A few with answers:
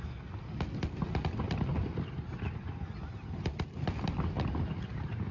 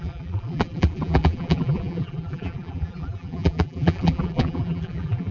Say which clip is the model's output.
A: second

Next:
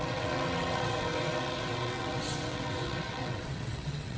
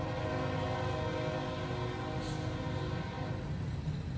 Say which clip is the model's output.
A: first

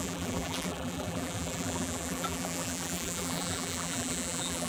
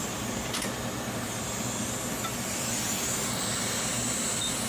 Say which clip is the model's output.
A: first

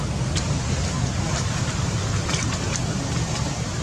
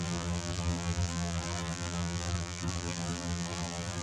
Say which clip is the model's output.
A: second